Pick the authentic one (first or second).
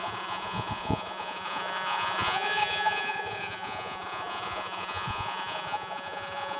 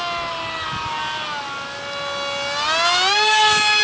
second